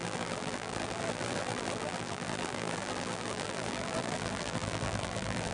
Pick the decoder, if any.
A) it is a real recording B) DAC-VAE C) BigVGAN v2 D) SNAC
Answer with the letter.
C